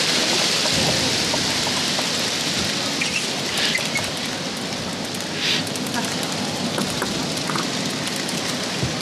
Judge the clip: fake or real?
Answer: real